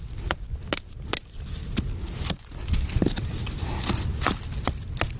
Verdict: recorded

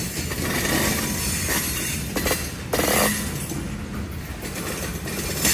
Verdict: recorded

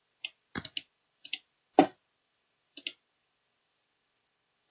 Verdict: recorded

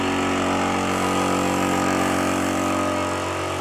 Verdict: recorded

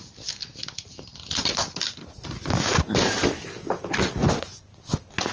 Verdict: recorded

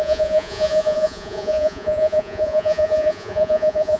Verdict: remade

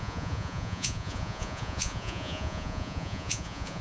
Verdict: remade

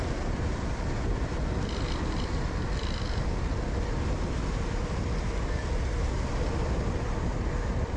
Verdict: recorded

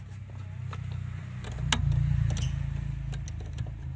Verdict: recorded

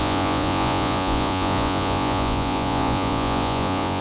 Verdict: remade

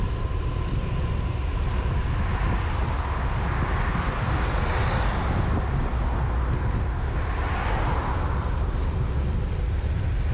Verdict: recorded